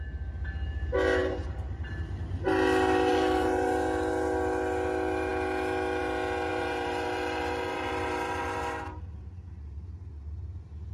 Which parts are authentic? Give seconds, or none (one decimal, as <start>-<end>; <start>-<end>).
0.0-1.2; 1.9-3.1; 3.7-6.5; 9.2-10.9

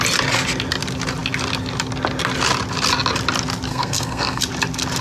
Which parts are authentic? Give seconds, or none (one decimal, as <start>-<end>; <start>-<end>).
0.0-3.7; 4.4-5.0

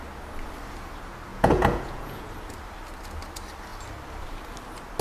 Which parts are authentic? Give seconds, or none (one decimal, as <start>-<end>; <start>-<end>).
0.0-1.3; 2.3-5.0

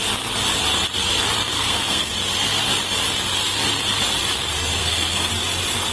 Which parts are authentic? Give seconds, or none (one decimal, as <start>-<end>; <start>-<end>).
0.0-1.5; 2.1-4.8; 5.3-5.9